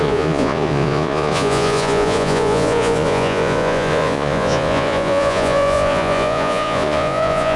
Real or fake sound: fake